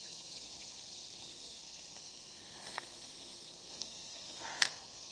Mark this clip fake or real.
fake